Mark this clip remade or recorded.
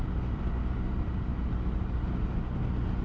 recorded